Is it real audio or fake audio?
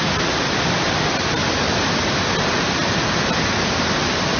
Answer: real